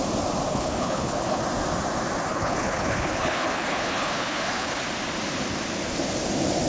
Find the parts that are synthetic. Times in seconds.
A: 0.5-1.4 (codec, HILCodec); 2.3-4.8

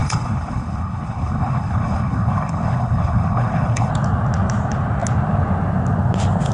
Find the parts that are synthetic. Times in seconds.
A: 0.0-3.9 (codec, HILCodec)

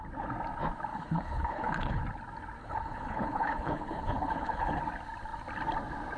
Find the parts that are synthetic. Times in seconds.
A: 0.9-2.0 (codec, HILCodec); 2.6-4.8

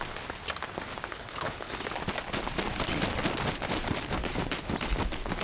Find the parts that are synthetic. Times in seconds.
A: 1.1-1.7 (codec, HILCodec)

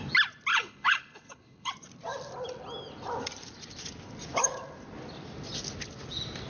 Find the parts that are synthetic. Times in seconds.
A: 0.5-1.7 (codec, HILCodec)

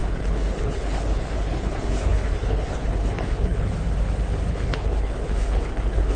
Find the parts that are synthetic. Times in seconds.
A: 0.0-3.7 (codec, HILCodec); 4.5-6.2

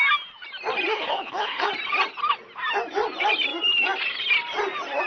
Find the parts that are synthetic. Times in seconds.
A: 0.9-1.7 (codec, HILCodec)

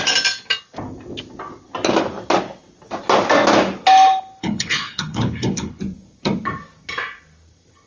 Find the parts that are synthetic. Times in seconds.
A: 4.4-5.8 (codec, HILCodec)